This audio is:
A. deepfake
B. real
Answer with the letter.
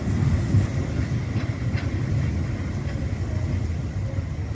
B